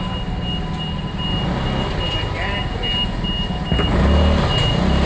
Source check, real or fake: real